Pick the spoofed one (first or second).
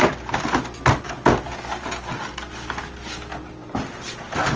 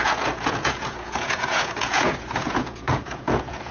second